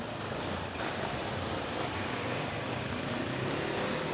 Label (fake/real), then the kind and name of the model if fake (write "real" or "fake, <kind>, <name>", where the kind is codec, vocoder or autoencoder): real